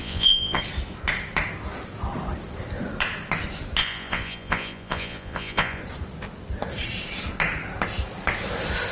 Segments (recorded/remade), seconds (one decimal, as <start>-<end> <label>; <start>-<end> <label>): 0.0-0.6 remade; 0.6-3.8 recorded; 3.8-5.8 remade; 5.8-8.9 recorded